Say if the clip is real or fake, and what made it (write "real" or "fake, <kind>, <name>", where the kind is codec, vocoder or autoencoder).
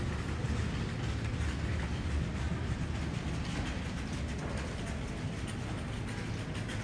real